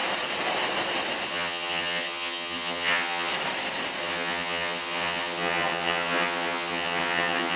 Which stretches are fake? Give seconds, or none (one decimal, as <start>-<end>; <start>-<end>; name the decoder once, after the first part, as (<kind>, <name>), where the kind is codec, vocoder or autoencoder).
1.3-3.3 (vocoder, HiFi-GAN); 4.0-7.6